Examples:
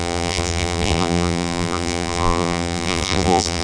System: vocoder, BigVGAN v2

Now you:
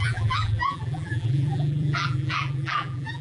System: vocoder, BigVGAN v2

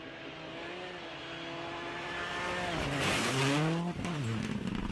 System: none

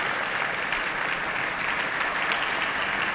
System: vocoder, BigVGAN v2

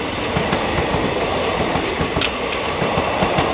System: none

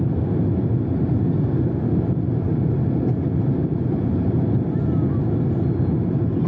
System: none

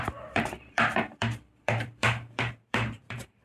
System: vocoder, BigVGAN v2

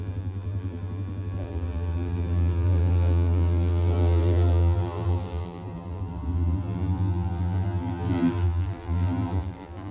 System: vocoder, BigVGAN v2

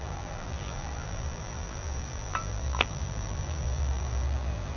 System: vocoder, BigVGAN v2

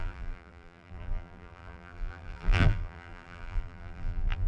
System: vocoder, BigVGAN v2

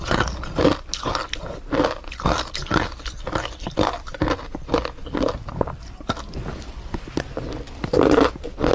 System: none